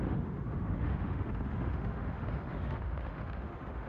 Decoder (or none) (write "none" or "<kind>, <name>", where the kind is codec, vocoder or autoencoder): autoencoder, DAC-VAE